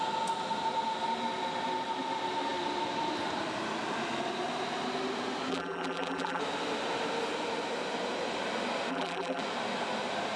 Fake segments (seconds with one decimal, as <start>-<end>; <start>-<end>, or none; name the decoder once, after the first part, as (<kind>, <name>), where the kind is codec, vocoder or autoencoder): 5.5-6.4 (vocoder, BigVGAN v2); 8.9-9.4